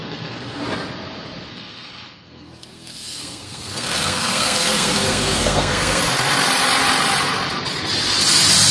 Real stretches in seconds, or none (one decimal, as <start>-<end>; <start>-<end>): 0.6-1.5; 6.0-8.7